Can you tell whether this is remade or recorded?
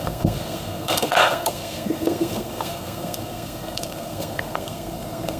remade